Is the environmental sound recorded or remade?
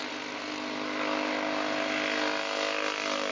recorded